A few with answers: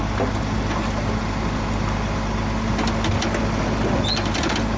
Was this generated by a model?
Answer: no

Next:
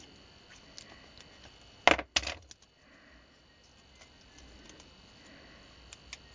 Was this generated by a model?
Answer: no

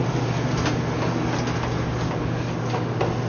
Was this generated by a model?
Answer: no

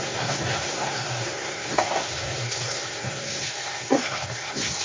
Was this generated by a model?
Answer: yes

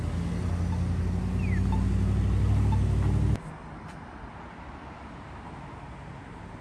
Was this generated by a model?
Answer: no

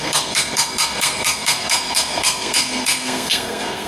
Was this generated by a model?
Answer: yes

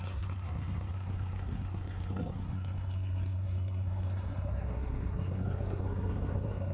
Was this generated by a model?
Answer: yes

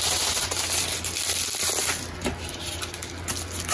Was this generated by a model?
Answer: no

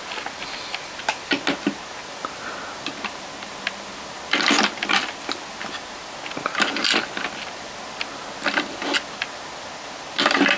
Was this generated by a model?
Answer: no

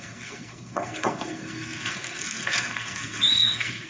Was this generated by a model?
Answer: yes